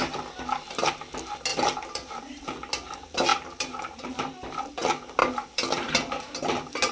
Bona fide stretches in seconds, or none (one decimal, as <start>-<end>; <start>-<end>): 0.0-1.5; 2.4-3.3; 4.7-5.2; 5.9-6.9